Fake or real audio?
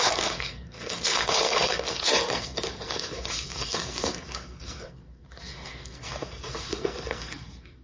fake